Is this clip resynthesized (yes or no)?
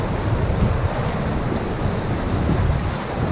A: no